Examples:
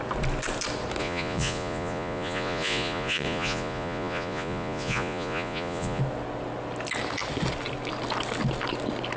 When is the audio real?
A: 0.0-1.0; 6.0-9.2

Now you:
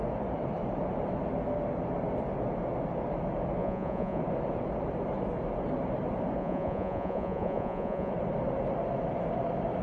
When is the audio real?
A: 0.0-3.6; 4.2-6.4; 8.1-9.8

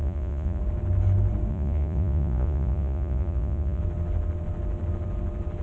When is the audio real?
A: 0.6-1.5; 3.8-5.6

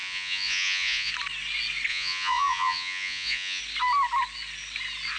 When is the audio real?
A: 1.1-1.9; 3.6-5.2

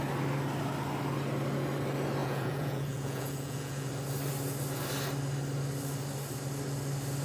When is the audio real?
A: 0.0-2.2; 3.9-7.2